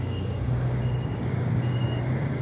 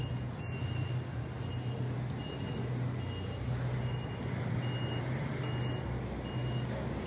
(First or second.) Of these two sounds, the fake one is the first